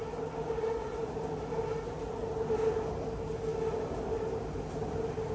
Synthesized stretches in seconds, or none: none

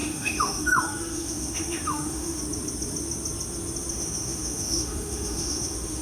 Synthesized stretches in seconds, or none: 0.0-2.4 (autoencoder, DAC-VAE); 3.9-6.0

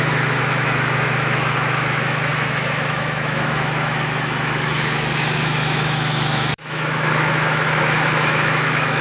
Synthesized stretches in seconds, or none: 0.0-9.0 (autoencoder, DAC-VAE)

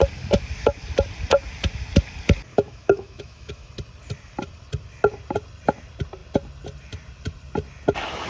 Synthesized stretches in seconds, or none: 2.5-3.7 (autoencoder, DAC-VAE)

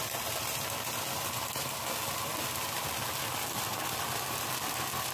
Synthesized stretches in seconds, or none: none